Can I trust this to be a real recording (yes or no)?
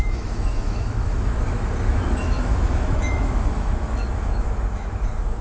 no